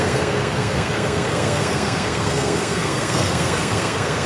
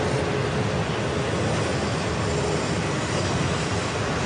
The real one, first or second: second